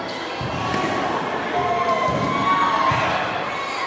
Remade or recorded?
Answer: recorded